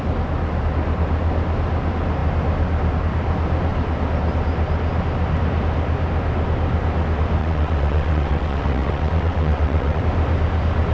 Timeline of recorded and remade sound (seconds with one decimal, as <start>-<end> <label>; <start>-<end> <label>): 0.0-7.4 recorded; 7.4-10.0 remade; 10.0-10.9 recorded